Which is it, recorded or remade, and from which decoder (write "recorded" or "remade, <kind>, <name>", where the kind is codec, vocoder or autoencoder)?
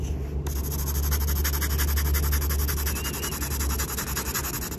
recorded